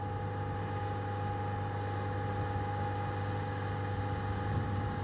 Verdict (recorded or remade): recorded